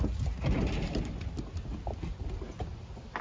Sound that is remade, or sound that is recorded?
recorded